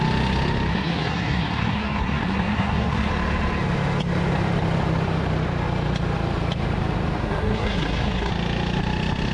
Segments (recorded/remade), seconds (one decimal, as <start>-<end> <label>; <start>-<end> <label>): 0.0-0.7 recorded; 0.7-3.1 remade; 3.1-7.2 recorded; 7.2-8.3 remade; 8.3-9.3 recorded